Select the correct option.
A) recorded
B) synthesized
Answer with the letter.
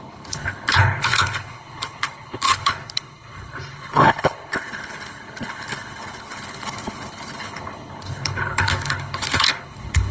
B